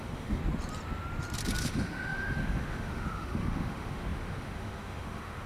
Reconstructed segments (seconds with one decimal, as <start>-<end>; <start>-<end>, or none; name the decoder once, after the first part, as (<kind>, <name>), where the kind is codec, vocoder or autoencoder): 0.0-0.4 (autoencoder, DAC-VAE); 1.6-5.5